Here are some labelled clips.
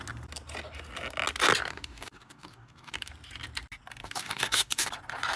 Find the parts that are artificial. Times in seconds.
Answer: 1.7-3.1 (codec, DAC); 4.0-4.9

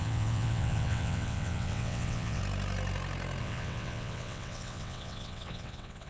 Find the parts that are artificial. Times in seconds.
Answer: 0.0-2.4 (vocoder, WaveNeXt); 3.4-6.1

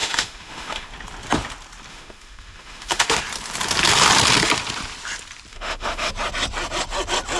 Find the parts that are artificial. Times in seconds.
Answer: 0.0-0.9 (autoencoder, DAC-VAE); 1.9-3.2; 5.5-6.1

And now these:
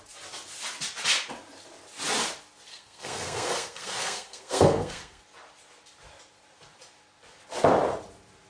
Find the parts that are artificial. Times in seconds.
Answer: 2.7-5.2 (codec, SNAC)

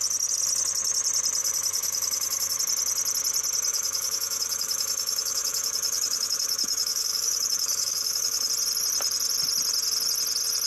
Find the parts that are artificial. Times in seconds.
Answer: 1.4-2.6 (autoencoder, DAC-VAE); 3.7-8.5